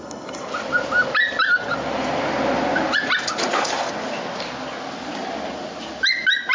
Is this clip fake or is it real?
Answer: real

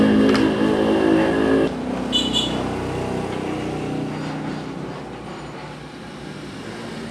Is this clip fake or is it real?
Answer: real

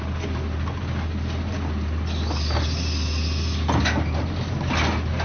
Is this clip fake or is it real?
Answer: real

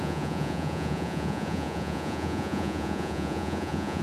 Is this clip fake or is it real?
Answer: fake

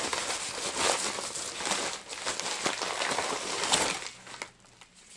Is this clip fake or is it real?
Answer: real